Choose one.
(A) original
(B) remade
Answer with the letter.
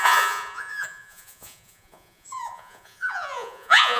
B